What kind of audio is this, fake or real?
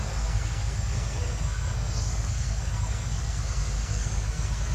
fake